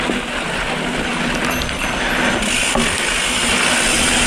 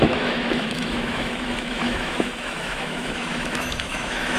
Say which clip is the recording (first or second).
first